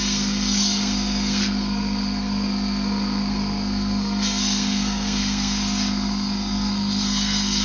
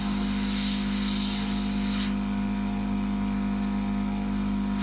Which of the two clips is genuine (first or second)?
second